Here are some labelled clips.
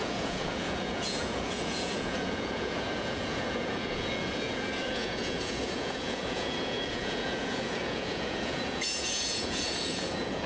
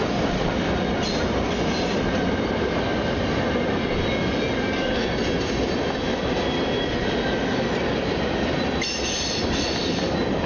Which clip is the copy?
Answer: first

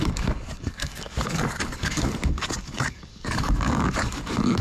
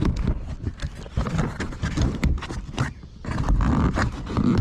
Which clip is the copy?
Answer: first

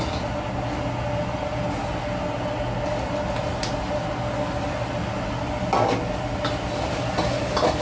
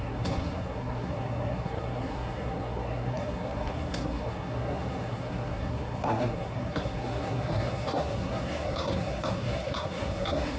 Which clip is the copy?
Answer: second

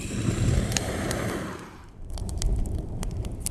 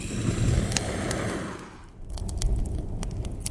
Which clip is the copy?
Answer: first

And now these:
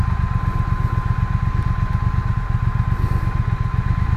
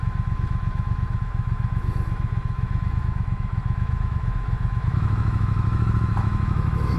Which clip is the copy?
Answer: second